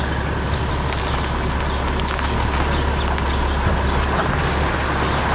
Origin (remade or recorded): recorded